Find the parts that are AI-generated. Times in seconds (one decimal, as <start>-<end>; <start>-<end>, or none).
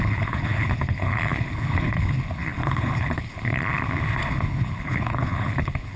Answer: 0.0-3.6; 4.3-6.0